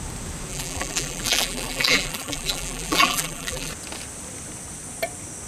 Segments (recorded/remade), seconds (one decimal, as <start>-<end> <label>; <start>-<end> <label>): 0.0-0.5 recorded; 0.5-3.7 remade; 3.7-5.5 recorded

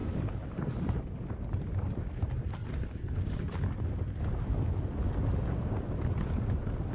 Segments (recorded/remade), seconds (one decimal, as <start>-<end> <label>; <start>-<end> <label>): 0.0-2.6 remade; 2.6-6.9 recorded